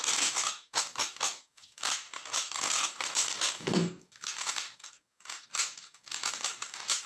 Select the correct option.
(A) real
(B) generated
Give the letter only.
B